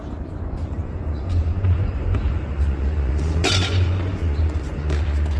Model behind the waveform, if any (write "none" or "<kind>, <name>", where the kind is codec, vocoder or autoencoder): vocoder, Vocos